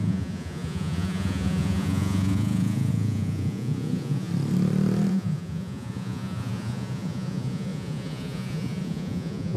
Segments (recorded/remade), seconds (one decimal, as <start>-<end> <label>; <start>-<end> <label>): 0.0-4.3 remade; 4.3-5.1 recorded; 5.1-9.6 remade